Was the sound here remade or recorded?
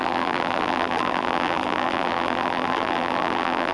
remade